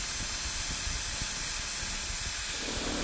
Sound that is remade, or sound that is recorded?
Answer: recorded